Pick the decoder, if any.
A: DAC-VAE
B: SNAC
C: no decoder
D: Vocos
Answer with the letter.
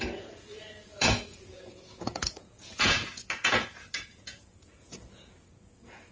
D